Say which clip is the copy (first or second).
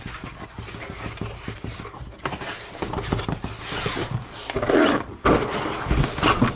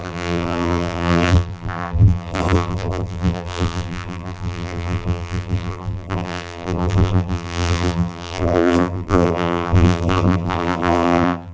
second